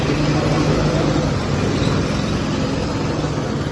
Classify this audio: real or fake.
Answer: real